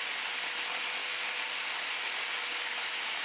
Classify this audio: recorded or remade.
recorded